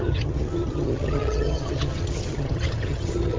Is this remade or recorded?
remade